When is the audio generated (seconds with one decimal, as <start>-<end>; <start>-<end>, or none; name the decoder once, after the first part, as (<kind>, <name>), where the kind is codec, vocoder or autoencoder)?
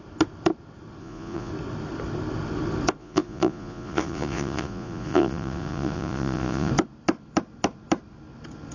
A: 1.0-1.5 (vocoder, Vocos); 3.0-6.7